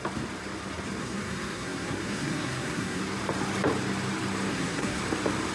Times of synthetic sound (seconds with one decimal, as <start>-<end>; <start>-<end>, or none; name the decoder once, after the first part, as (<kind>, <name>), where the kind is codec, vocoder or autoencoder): 1.0-3.0 (codec, SNAC); 4.5-5.0